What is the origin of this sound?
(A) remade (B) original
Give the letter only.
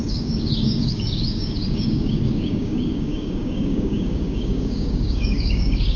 A